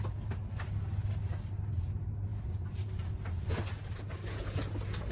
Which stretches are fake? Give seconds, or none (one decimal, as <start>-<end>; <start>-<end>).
none